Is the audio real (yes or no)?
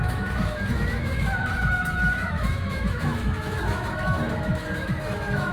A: no